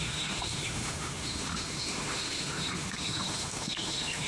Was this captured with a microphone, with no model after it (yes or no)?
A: no